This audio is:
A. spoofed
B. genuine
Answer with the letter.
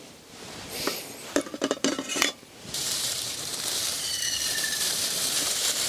A